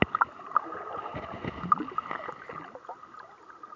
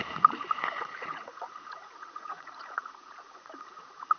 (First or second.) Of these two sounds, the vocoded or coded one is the second